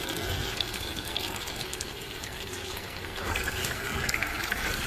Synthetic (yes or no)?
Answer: yes